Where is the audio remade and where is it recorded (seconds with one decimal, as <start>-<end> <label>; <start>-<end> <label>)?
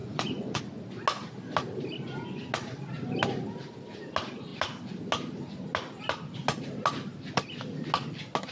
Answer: 0.0-0.6 remade; 0.6-8.5 recorded